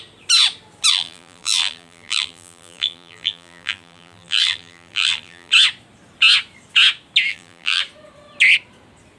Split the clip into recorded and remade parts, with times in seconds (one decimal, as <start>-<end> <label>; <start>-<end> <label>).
0.0-0.9 recorded; 0.9-5.5 remade; 5.5-7.3 recorded; 7.3-7.8 remade; 7.8-9.2 recorded